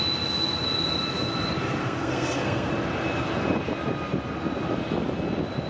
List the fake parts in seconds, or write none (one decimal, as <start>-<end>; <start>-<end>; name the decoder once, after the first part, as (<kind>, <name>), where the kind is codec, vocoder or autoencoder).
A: 1.8-2.7 (codec, SNAC)